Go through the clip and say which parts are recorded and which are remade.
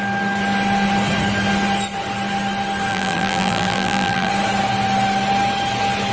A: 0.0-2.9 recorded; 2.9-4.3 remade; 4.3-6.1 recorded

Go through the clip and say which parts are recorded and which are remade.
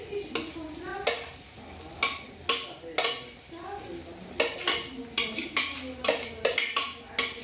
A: 0.0-7.4 recorded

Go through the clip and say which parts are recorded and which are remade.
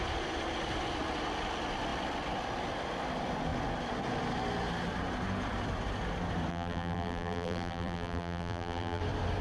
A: 0.0-6.5 recorded; 6.5-9.0 remade; 9.0-9.4 recorded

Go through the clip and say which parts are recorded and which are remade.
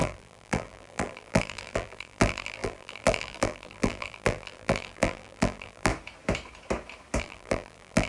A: 0.0-5.9 remade; 5.9-7.2 recorded; 7.2-8.1 remade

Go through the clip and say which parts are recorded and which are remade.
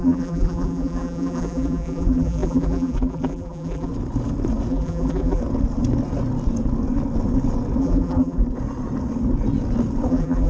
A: 0.0-3.9 remade; 3.9-4.7 recorded; 4.7-5.4 remade; 5.4-7.8 recorded; 7.8-8.4 remade; 8.4-10.1 recorded; 10.1-10.5 remade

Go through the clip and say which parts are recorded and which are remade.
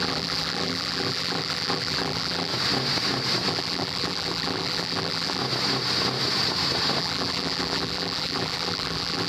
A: 0.0-2.5 remade; 2.5-3.5 recorded; 3.5-5.4 remade; 5.4-7.0 recorded; 7.0-9.3 remade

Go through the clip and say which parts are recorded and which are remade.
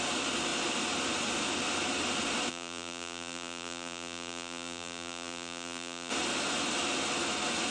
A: 0.0-2.5 recorded; 2.5-6.1 remade; 6.1-7.7 recorded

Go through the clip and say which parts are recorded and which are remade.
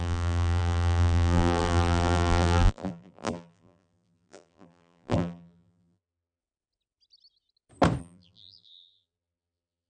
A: 0.0-6.4 remade; 6.4-8.0 recorded; 8.0-9.9 remade